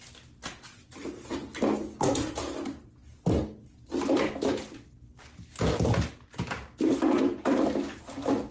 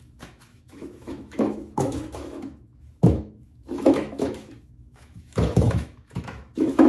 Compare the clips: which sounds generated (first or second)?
second